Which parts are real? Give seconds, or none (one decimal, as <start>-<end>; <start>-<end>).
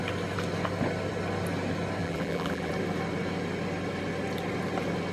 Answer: 0.0-2.0; 2.7-5.1